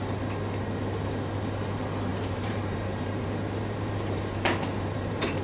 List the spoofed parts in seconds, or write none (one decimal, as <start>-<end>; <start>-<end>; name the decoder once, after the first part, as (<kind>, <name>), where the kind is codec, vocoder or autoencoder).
2.1-5.4 (vocoder, BigVGAN v2)